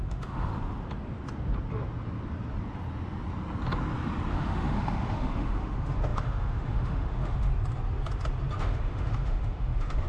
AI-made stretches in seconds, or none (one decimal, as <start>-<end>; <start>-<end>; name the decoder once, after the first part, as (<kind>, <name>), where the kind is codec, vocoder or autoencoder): 0.0-0.5 (autoencoder, DAC-VAE); 4.3-7.5; 8.6-10.1